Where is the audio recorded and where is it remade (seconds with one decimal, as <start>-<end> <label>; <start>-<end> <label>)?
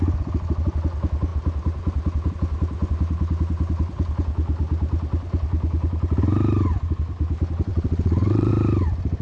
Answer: 0.0-7.7 recorded; 7.7-8.5 remade; 8.5-9.2 recorded